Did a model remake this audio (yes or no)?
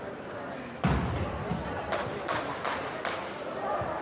no